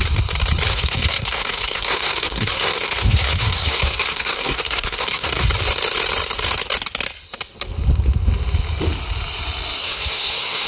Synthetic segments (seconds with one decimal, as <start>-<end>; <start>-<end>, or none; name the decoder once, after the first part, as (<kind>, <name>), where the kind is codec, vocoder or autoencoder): 0.7-5.5 (codec, SNAC); 9.8-10.7